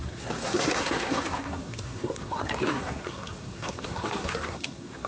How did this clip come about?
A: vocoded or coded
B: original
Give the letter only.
A